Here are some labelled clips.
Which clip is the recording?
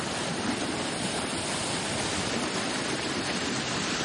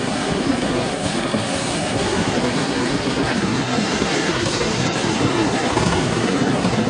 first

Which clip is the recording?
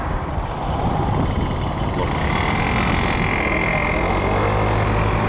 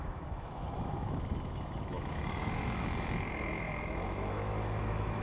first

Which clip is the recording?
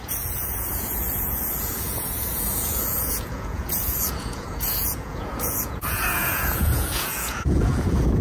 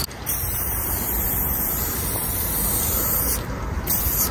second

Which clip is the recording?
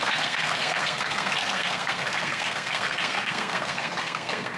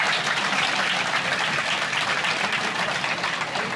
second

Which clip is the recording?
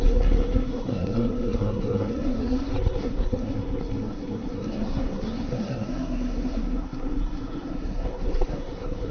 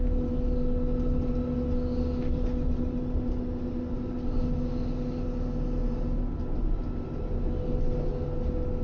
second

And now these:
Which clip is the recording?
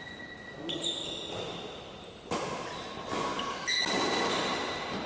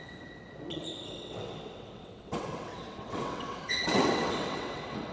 first